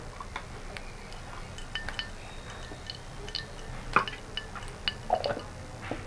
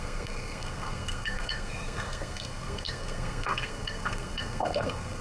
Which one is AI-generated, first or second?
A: second